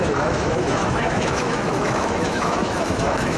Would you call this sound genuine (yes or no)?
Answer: no